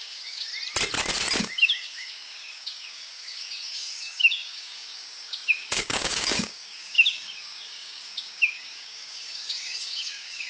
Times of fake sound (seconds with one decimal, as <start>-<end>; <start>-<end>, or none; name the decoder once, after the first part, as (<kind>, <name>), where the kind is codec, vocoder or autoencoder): 0.0-0.5 (codec, DAC); 1.4-10.5